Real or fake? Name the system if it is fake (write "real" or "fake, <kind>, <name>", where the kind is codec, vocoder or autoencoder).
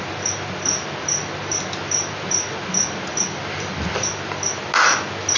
real